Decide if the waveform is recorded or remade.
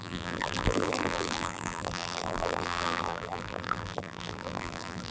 remade